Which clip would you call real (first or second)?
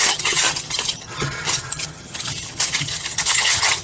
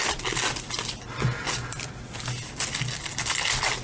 second